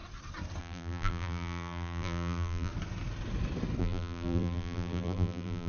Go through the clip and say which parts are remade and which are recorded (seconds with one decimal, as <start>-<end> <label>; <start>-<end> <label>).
0.0-0.6 recorded; 0.6-2.7 remade; 2.7-3.8 recorded; 3.8-5.7 remade